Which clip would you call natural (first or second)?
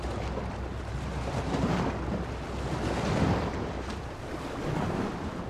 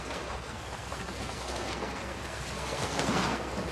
first